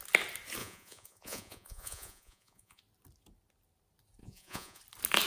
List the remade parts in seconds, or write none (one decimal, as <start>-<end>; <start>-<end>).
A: 0.6-2.8; 4.2-4.8